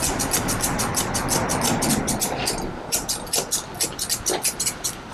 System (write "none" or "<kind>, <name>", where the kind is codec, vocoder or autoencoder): none